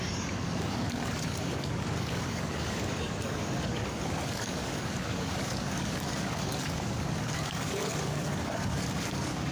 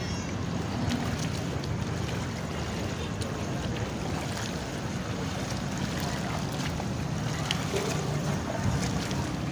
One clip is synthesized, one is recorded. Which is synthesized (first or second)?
first